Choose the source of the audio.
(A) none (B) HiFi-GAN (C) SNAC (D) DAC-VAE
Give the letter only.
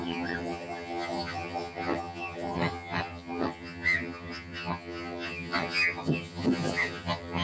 B